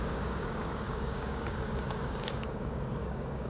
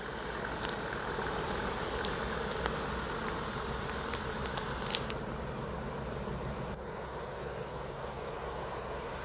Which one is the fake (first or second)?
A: first